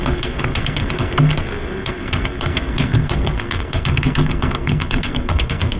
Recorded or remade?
remade